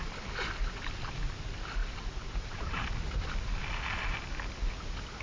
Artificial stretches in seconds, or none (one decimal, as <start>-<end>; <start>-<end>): 1.8-2.7